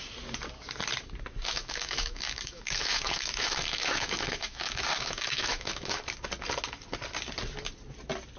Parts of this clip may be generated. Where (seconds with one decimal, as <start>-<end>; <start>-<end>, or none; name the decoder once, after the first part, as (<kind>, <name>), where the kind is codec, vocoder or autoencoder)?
1.4-6.0 (autoencoder, DAC-VAE)